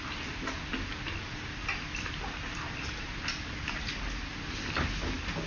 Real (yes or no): yes